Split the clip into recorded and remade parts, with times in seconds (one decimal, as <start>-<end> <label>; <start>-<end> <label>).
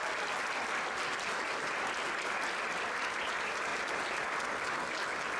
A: 0.0-3.7 recorded; 3.7-4.2 remade; 4.2-5.4 recorded